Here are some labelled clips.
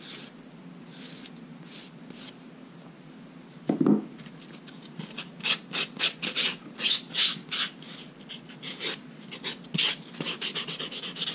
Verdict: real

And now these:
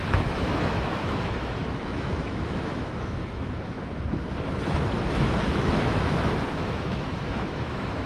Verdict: fake